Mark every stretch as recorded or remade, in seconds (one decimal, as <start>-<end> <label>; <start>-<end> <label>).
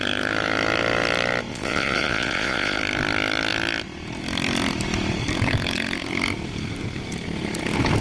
0.0-1.5 recorded; 1.5-2.8 remade; 2.8-8.0 recorded